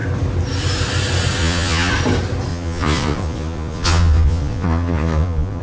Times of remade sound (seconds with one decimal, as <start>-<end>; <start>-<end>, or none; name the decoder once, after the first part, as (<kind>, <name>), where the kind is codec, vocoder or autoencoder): 1.4-1.9 (vocoder, Vocos); 2.5-5.6